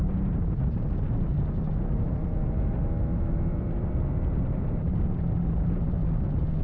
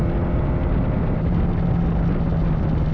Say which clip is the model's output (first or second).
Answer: first